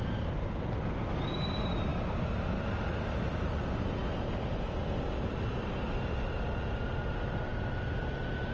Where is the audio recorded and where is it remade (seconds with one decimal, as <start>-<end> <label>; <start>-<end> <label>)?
0.0-8.5 recorded